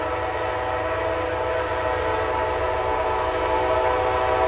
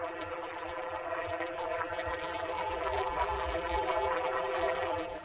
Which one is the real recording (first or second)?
first